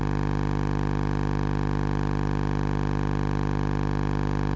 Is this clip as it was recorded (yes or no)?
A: yes